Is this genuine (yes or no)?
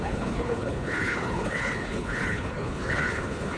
no